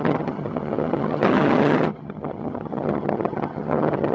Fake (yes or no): yes